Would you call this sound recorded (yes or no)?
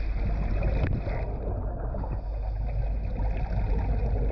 yes